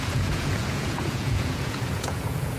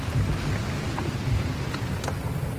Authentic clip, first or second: second